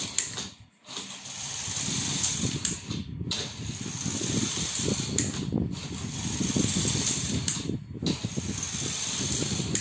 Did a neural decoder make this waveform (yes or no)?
no